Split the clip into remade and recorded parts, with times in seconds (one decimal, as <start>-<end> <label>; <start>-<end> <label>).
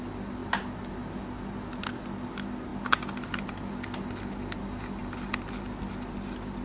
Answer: 0.0-6.6 recorded